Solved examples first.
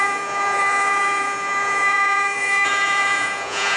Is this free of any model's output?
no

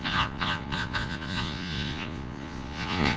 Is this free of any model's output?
no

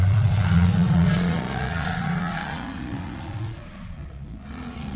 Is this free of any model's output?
no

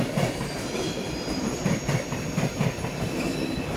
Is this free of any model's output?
yes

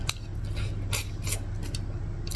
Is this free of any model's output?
yes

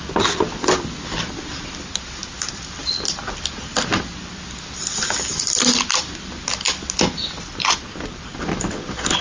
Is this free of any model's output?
yes